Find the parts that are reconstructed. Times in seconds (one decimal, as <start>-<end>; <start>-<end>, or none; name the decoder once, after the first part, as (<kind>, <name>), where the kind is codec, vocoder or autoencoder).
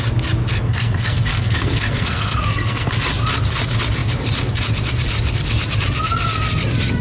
0.5-2.9 (codec, SNAC)